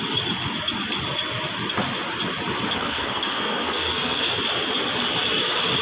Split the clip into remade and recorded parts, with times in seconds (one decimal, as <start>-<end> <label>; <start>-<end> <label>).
0.0-2.8 recorded; 2.8-4.3 remade; 4.3-5.8 recorded